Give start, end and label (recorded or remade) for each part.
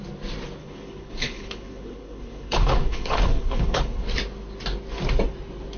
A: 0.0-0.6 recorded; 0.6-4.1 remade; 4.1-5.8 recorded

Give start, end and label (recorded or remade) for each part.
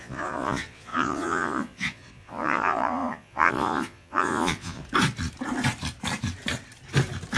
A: 0.0-4.8 remade; 4.8-7.4 recorded